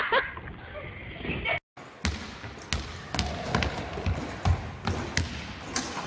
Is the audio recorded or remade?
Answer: recorded